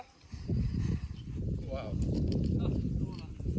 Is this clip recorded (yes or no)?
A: yes